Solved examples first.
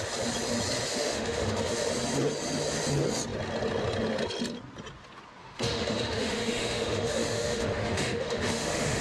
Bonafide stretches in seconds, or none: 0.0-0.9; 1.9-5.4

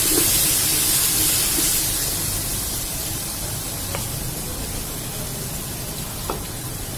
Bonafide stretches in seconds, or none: 0.0-2.5; 3.1-7.0

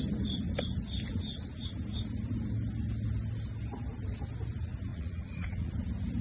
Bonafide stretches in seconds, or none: 0.0-4.9; 5.7-6.2